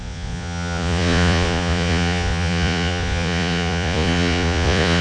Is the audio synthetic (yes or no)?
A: yes